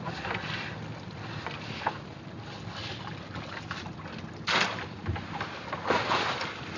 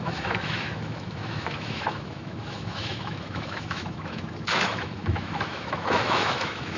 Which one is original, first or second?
first